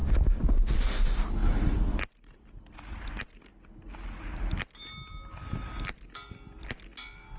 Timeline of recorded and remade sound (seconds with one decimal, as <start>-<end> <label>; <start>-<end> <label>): 0.0-1.4 recorded; 1.4-3.5 remade; 3.5-7.4 recorded